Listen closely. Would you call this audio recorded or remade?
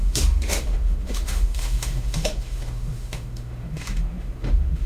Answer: remade